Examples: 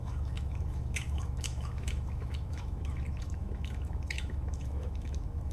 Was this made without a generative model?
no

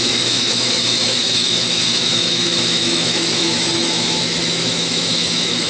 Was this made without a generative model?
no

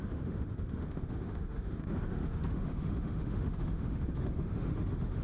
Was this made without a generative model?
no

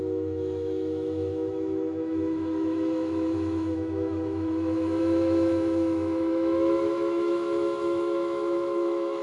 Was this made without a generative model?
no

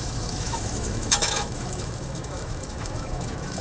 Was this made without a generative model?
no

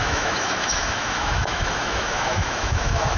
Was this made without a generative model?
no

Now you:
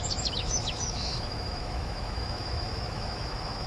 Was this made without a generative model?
no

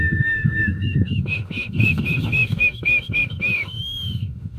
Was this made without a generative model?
no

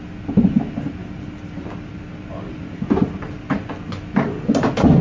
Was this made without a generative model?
yes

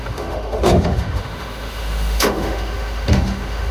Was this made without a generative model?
no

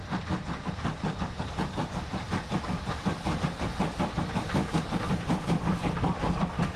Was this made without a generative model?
yes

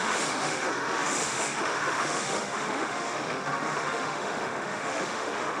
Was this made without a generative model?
no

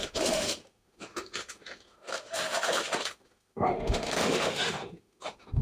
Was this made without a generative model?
no